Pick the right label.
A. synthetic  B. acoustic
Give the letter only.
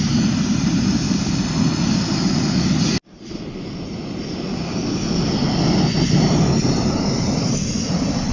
B